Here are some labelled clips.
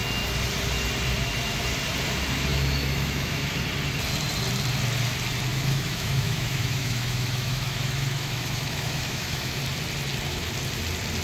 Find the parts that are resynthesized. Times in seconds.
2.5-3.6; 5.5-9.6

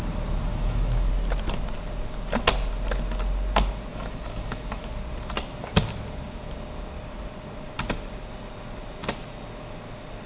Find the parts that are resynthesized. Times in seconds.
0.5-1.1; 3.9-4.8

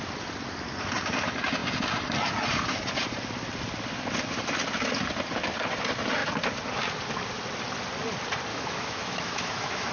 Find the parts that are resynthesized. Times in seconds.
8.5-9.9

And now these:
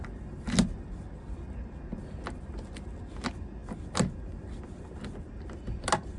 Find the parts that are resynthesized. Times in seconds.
none

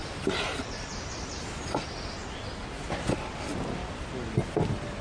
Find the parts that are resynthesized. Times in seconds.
none